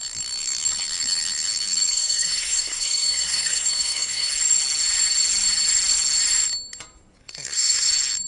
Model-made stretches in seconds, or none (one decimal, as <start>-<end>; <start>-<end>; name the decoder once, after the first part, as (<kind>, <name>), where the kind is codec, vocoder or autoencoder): 1.9-4.3 (codec, SNAC); 7.2-7.9

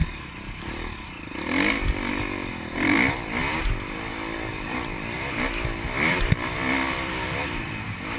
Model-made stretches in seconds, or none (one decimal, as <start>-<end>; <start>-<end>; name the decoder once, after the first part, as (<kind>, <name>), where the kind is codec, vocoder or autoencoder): 2.1-3.4 (vocoder, BigVGAN v2); 4.1-8.2

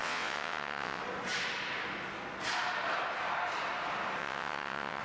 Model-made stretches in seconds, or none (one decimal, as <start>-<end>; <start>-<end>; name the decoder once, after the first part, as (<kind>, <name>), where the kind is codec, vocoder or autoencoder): 0.0-1.0 (vocoder, WaveNeXt); 4.2-5.0

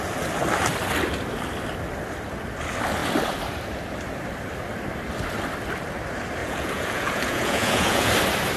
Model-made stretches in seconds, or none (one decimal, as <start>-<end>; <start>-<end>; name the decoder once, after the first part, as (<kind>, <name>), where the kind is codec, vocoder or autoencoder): 6.4-8.1 (vocoder, Vocos)

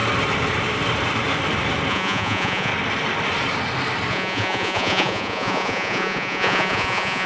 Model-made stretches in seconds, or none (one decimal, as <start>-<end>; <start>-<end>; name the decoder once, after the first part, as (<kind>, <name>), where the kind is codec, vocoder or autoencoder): 1.9-2.7 (vocoder, Vocos); 4.1-7.3

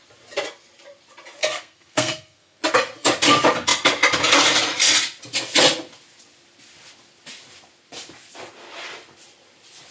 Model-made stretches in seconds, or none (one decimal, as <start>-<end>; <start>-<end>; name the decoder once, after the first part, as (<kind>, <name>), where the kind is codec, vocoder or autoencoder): 1.4-2.6 (codec, SNAC)

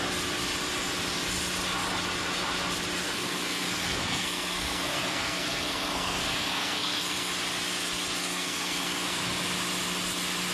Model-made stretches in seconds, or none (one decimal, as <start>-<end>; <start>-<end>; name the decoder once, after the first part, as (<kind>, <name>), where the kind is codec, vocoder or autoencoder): 3.0-7.3 (codec, SNAC); 8.2-9.2